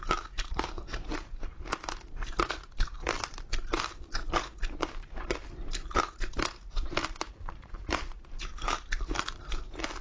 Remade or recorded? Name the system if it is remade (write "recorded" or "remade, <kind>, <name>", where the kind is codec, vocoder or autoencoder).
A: remade, vocoder, BigVGAN v2